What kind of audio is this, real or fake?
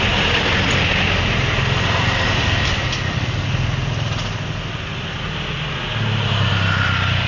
real